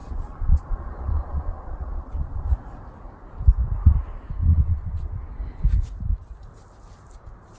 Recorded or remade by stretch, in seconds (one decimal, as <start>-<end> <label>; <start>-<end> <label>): 0.0-2.5 remade; 2.5-4.4 recorded; 4.4-5.1 remade; 5.1-7.6 recorded